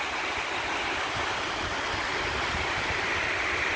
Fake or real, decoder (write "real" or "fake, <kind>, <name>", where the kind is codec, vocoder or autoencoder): real